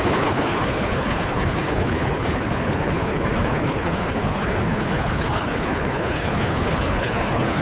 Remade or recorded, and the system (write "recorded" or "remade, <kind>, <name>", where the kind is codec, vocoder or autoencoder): remade, codec, HILCodec